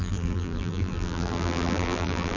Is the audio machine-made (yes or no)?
yes